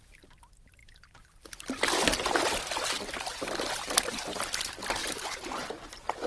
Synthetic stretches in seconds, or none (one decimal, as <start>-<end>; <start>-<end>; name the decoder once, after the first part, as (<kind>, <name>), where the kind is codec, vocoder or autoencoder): none